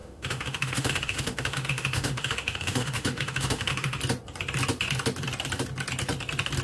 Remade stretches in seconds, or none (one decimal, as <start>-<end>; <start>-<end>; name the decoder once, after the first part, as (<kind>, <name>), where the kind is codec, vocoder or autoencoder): 0.0-4.0 (autoencoder, DAC-VAE)